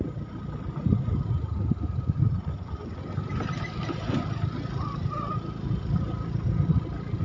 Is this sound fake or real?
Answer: real